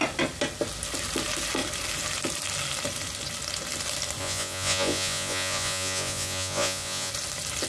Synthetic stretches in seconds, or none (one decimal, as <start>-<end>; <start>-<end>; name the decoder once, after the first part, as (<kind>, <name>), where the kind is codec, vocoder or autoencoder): 4.2-7.1 (vocoder, Vocos)